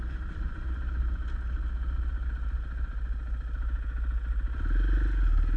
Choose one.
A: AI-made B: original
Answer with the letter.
B